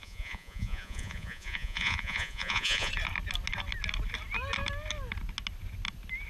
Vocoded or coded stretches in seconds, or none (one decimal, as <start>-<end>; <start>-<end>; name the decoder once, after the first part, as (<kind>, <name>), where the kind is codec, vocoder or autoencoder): 0.0-2.9 (vocoder, Vocos)